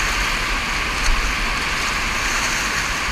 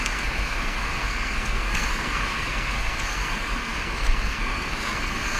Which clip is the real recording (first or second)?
first